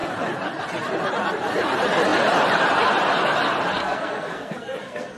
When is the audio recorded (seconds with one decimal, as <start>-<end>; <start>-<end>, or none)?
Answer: 0.0-3.8